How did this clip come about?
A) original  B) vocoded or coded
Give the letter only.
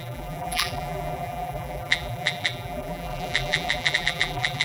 B